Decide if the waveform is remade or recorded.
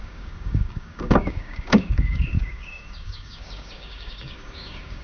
remade